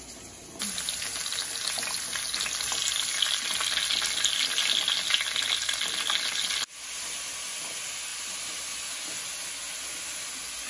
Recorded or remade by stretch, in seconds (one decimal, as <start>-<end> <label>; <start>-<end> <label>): 0.0-10.7 recorded